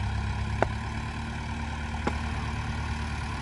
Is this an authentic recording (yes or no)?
yes